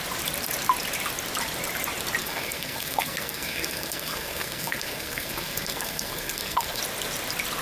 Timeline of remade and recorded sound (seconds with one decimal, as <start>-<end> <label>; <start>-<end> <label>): 0.0-2.2 recorded; 2.2-6.8 remade; 6.8-7.6 recorded